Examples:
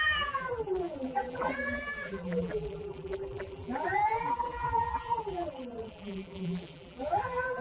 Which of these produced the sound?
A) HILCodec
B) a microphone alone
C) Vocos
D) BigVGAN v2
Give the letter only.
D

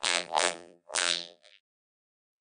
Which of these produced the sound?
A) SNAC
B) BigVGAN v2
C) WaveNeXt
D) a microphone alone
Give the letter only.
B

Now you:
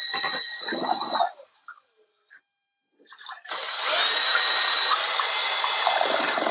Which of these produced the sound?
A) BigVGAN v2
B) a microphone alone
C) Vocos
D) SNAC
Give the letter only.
A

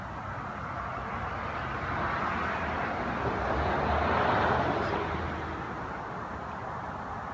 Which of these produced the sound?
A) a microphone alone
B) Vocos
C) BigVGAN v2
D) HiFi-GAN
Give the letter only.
A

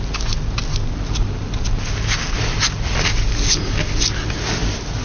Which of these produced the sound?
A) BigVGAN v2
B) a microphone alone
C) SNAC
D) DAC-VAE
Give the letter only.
B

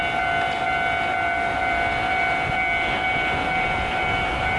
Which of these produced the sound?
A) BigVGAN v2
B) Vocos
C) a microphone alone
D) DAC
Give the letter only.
C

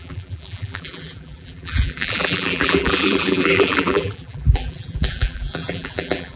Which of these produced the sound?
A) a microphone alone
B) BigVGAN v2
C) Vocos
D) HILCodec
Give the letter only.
B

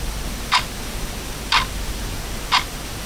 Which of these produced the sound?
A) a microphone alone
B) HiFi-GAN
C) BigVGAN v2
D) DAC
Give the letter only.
A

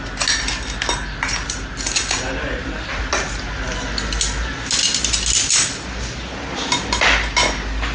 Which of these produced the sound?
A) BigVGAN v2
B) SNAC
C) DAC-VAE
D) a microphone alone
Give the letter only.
D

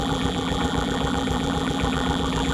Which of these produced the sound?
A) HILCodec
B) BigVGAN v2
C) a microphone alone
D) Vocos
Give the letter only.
B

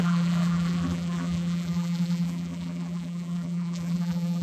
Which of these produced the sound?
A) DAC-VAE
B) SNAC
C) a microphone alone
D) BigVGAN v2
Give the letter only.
D